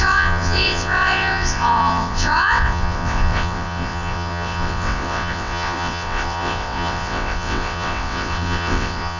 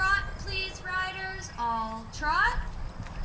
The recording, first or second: second